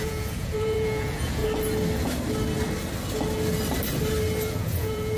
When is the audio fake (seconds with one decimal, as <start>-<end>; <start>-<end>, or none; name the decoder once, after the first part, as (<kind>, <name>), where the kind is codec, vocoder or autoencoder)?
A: 0.0-1.4 (vocoder, Vocos); 4.5-5.2